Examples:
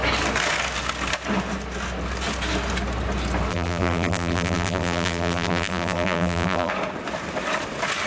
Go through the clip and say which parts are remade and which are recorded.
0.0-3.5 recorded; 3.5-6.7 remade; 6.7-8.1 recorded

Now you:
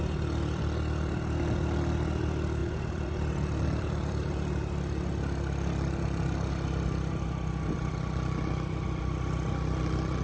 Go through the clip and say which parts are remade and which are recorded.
0.0-2.6 recorded; 2.6-4.5 remade; 4.5-10.2 recorded

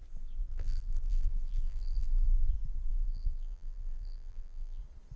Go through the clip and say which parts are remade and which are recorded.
0.0-0.5 recorded; 0.5-2.5 remade; 2.5-2.9 recorded; 2.9-4.8 remade; 4.8-5.2 recorded

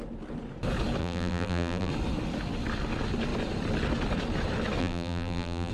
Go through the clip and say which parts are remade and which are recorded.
0.0-1.0 recorded; 1.0-1.9 remade; 1.9-4.8 recorded; 4.8-5.7 remade

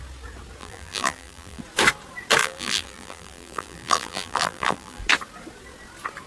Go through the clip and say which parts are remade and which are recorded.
0.0-0.6 recorded; 0.6-1.6 remade; 1.6-2.4 recorded; 2.4-5.0 remade; 5.0-6.3 recorded

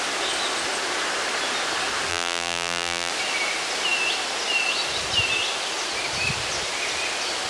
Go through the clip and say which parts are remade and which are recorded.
0.0-2.1 recorded; 2.1-3.1 remade; 3.1-7.5 recorded

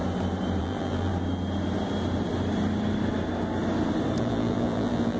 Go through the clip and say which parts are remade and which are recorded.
0.0-0.6 recorded; 0.6-1.1 remade; 1.1-4.2 recorded; 4.2-5.2 remade